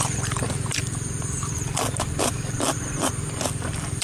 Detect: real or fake fake